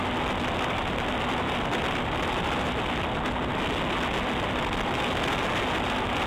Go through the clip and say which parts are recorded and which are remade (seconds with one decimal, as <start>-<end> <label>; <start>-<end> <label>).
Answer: 0.0-6.3 recorded